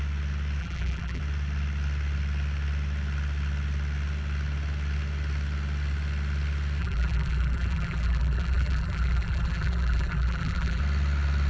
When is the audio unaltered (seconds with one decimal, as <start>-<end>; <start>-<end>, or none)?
0.0-0.6; 1.2-6.8; 10.8-11.5